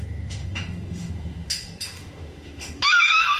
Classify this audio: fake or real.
fake